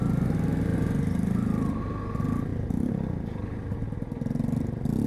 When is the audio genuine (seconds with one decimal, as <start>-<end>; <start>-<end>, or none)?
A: 0.0-5.1